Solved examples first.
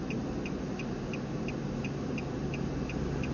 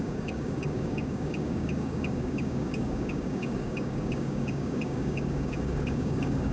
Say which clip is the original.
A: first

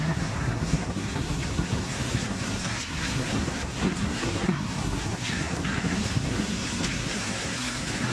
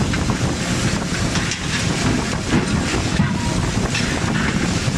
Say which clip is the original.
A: second